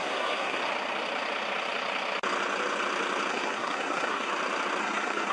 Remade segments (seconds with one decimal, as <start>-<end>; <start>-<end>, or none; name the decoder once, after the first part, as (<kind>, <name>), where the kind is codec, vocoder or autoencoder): 0.0-0.6 (codec, SNAC); 3.3-4.3; 4.8-5.3